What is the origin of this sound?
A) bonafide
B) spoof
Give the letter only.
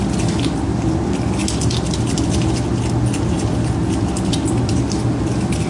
A